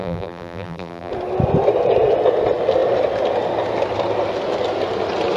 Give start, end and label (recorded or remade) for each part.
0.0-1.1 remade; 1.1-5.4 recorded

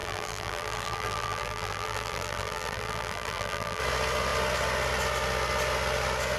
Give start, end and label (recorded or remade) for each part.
0.0-3.8 remade; 3.8-6.4 recorded